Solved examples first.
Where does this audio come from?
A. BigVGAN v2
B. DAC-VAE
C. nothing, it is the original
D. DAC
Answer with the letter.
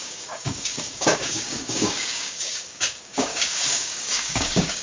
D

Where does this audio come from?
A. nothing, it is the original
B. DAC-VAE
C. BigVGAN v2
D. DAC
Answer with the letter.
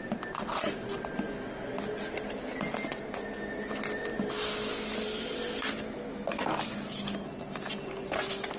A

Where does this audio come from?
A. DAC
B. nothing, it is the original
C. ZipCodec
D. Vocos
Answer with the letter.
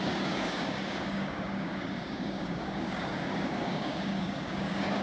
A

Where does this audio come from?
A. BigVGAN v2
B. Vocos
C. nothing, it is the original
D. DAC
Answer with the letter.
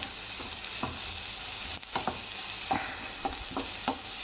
C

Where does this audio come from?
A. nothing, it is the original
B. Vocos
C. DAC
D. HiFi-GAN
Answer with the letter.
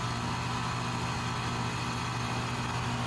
A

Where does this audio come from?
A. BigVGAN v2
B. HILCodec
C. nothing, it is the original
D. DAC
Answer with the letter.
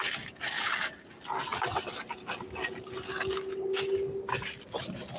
C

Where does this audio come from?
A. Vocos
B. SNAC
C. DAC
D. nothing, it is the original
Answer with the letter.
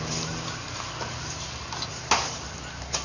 D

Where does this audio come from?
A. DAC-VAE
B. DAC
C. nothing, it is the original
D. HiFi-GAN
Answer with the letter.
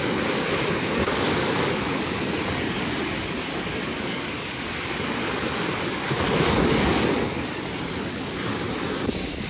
B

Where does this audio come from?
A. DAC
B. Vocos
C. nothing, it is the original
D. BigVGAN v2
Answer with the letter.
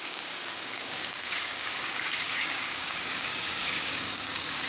A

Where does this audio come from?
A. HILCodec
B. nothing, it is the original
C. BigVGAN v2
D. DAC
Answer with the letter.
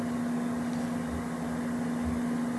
B